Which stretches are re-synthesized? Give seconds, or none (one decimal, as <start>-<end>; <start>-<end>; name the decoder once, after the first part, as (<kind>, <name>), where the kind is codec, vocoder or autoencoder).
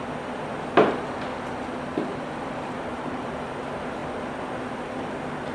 2.1-3.4 (vocoder, BigVGAN v2)